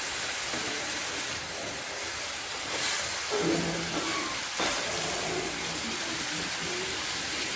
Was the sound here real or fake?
real